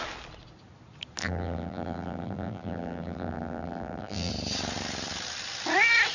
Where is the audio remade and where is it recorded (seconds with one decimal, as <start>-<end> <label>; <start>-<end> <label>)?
0.0-1.2 recorded; 1.2-4.3 remade; 4.3-6.1 recorded